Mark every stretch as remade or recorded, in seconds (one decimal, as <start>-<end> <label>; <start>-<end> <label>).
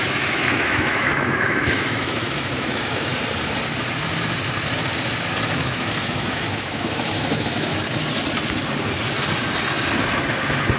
0.0-3.1 remade; 3.1-5.5 recorded; 5.5-7.7 remade; 7.7-10.8 recorded